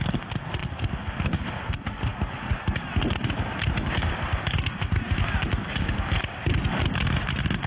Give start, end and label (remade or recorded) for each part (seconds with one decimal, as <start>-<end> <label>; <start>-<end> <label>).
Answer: 0.0-7.7 recorded